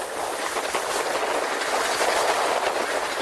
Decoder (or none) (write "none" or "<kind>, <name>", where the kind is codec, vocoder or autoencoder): none